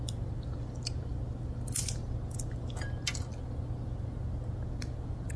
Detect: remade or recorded recorded